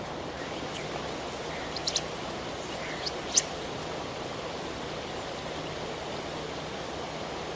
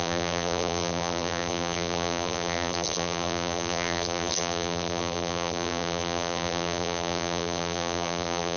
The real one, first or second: first